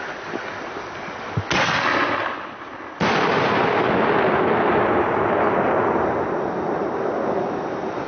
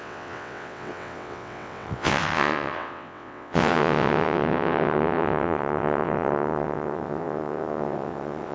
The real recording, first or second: first